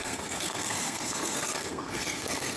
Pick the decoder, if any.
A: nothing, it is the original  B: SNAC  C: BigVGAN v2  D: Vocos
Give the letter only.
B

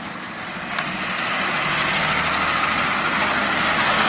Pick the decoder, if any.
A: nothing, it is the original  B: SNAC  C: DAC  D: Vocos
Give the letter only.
A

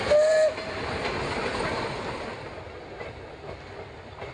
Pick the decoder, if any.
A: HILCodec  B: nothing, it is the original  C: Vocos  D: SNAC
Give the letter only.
B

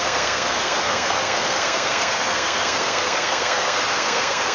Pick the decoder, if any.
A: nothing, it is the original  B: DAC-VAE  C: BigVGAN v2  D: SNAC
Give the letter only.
D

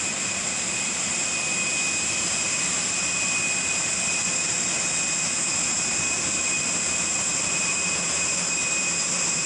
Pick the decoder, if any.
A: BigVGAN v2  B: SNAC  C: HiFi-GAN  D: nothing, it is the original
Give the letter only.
D